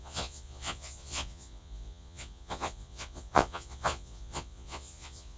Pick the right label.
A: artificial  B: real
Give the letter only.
A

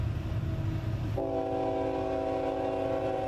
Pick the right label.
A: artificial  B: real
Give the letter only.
B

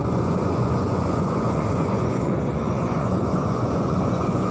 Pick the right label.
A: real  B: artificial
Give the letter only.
B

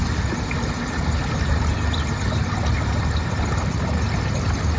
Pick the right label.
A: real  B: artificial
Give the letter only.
A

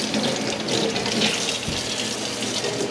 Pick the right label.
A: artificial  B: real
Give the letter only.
B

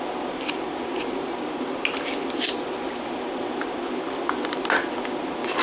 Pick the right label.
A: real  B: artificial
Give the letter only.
A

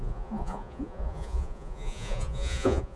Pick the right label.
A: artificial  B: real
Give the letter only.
A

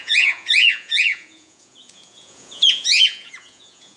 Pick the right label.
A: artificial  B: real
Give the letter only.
A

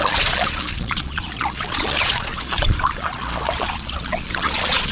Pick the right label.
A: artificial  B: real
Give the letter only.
A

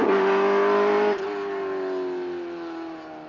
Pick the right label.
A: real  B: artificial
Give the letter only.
A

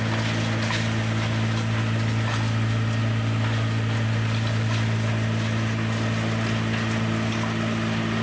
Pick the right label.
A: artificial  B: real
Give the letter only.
B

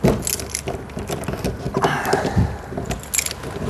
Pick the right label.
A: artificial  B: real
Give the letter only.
B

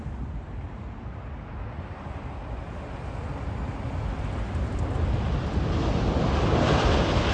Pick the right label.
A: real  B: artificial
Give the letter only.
A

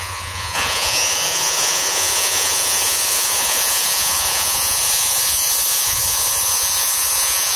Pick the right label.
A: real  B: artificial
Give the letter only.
B